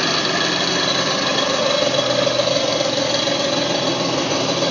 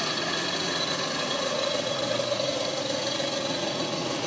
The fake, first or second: second